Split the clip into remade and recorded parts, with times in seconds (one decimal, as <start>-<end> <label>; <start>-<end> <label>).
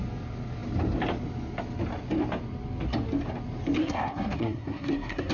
0.0-3.8 recorded; 3.8-5.3 remade